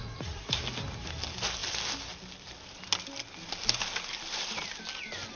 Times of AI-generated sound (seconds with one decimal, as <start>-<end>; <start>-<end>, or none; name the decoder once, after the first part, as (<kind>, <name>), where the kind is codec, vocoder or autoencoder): 0.0-0.6 (vocoder, Vocos)